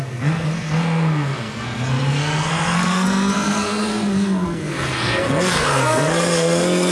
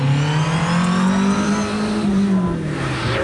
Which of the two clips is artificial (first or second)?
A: first